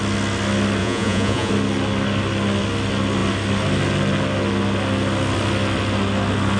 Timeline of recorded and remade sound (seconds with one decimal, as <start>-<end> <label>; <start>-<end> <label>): 0.0-0.8 recorded; 0.8-1.5 remade; 1.5-6.6 recorded